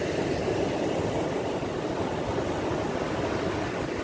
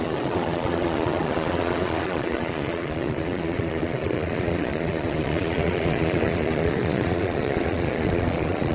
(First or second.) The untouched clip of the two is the first